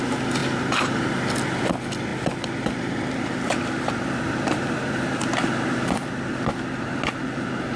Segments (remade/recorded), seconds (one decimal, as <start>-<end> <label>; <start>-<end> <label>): 0.0-7.8 recorded